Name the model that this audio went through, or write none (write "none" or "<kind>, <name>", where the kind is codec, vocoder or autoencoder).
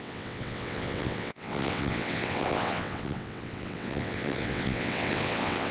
vocoder, WaveNeXt